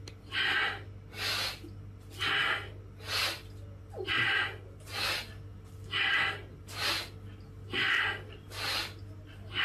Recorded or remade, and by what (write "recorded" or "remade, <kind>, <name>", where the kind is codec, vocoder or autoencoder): recorded